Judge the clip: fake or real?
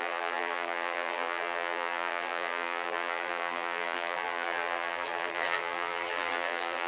fake